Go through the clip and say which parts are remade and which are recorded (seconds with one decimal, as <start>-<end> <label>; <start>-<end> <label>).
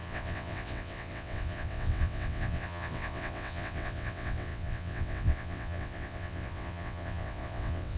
0.0-8.0 remade